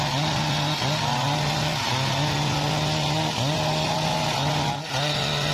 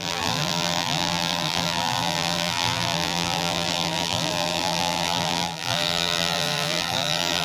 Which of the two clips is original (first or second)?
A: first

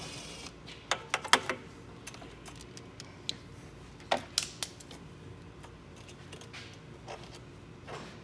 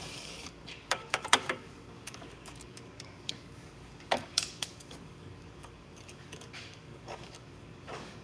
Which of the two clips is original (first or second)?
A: first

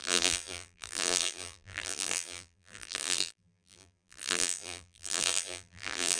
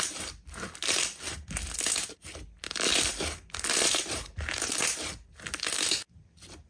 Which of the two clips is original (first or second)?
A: second